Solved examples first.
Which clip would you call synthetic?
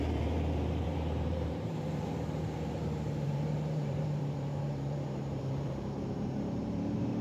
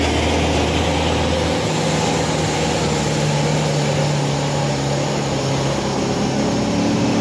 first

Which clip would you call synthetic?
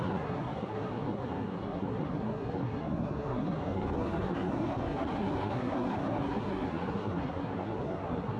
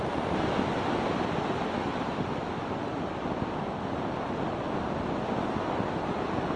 first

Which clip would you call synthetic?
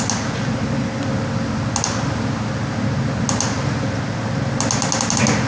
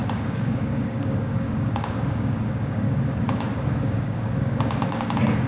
second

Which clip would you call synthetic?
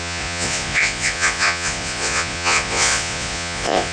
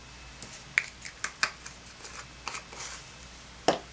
first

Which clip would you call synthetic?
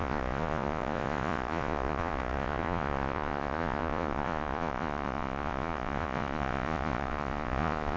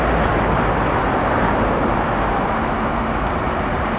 first